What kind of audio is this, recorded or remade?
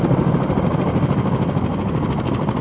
remade